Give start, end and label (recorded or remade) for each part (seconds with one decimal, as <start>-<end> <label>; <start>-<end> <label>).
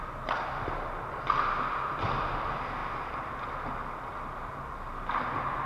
0.0-5.7 recorded